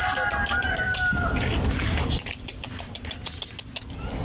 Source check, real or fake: real